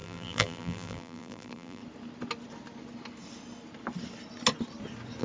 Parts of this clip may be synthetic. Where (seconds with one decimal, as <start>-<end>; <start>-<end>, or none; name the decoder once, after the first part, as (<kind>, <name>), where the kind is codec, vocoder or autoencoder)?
0.0-1.8 (vocoder, BigVGAN v2)